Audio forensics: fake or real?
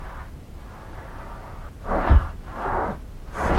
real